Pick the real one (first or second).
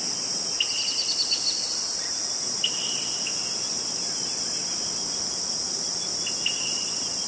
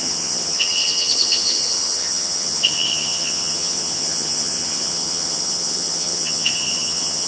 first